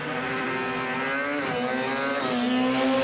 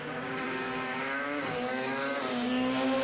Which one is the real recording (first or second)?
first